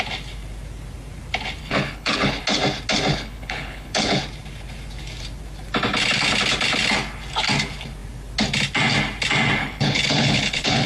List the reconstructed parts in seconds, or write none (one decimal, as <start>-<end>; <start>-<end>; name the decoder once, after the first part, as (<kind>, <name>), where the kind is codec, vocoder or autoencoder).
1.6-2.4 (codec, HILCodec); 3.1-4.2; 9.6-10.9